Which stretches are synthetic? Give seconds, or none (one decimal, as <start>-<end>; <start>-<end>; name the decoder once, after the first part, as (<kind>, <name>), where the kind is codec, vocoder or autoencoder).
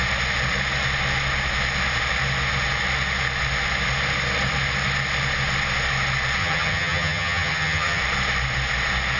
6.4-8.0 (vocoder, HiFi-GAN)